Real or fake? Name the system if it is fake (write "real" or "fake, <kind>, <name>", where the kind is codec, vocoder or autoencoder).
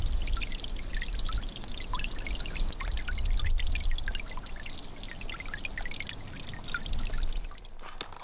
real